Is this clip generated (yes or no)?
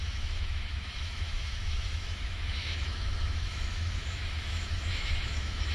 yes